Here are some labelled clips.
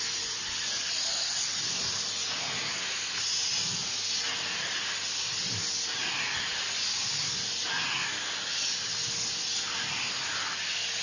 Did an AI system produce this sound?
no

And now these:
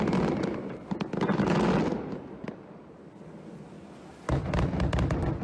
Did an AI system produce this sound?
no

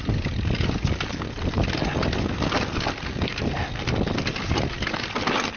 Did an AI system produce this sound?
no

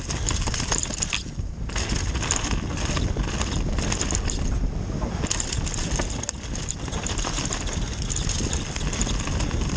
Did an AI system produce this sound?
no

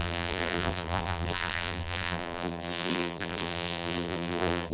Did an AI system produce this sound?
yes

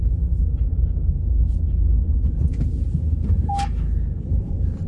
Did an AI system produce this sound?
no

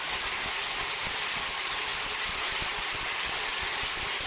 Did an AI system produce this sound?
no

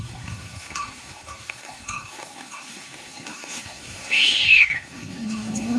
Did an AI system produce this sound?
yes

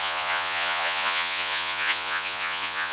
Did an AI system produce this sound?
yes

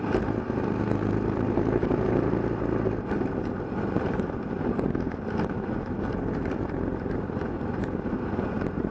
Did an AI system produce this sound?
yes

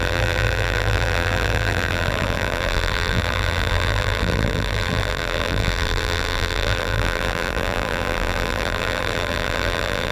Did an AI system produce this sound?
yes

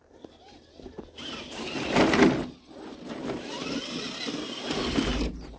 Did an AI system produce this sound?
no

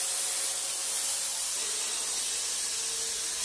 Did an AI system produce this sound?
no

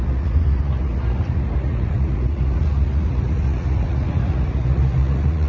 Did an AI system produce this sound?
yes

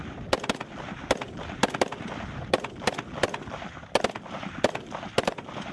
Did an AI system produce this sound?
no